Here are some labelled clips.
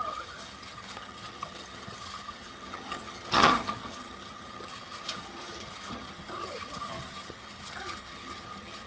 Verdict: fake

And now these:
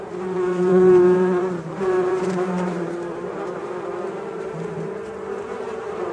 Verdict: fake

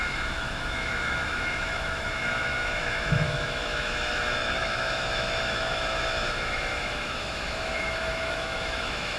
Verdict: fake